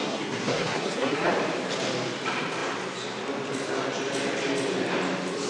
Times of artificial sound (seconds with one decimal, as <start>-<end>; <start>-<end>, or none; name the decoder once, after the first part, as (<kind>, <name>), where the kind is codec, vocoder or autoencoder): 0.0-1.3 (codec, SNAC)